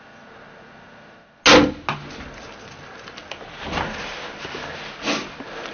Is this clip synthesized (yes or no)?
no